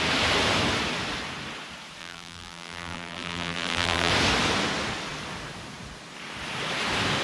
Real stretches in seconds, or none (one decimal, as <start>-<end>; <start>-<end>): 0.0-2.0; 4.1-7.2